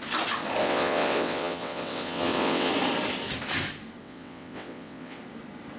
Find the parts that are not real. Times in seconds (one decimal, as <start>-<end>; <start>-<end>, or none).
0.6-2.7; 4.0-5.2